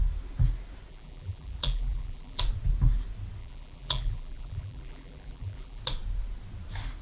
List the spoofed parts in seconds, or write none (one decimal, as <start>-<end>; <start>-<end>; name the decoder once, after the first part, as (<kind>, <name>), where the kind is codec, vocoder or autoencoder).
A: 0.9-2.4 (vocoder, BigVGAN v2); 3.4-5.8